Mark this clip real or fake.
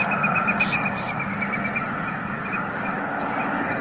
real